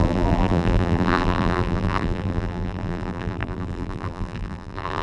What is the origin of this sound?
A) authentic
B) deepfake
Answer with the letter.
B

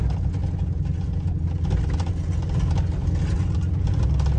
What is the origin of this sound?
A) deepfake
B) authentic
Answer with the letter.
B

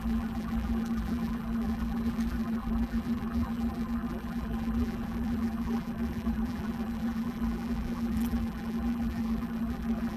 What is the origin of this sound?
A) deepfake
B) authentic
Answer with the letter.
A